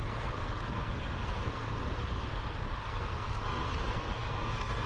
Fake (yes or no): yes